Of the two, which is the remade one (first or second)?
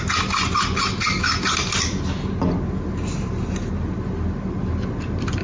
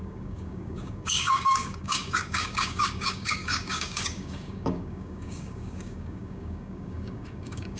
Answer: second